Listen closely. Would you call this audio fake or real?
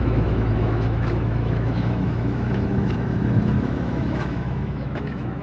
fake